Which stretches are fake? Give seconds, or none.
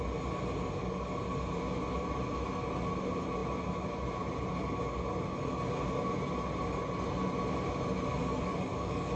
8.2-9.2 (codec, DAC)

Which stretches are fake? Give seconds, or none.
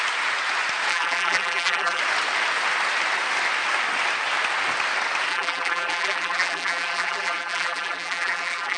0.9-2.0 (vocoder, BigVGAN v2); 5.3-8.8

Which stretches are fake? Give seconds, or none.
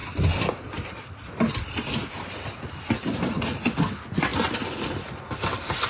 none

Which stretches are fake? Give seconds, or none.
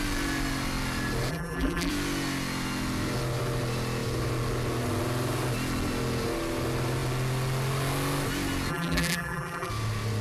1.3-1.9 (vocoder, BigVGAN v2); 8.7-9.7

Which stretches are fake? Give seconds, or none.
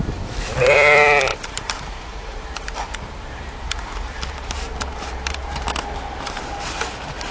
1.3-5.7 (vocoder, BigVGAN v2)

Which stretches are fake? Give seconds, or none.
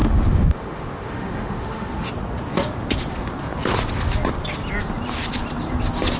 0.0-2.1 (autoencoder, DAC-VAE)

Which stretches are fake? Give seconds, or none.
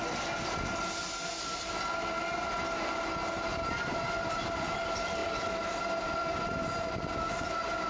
3.5-4.7 (vocoder, BigVGAN v2)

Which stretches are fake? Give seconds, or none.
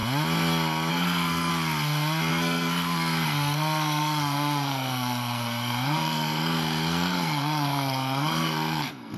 0.9-1.5 (codec, SNAC); 2.3-9.2